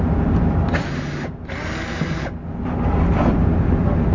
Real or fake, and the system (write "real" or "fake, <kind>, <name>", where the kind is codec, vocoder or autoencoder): real